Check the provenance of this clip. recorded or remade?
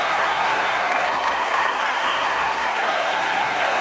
remade